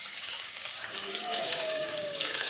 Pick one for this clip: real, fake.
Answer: fake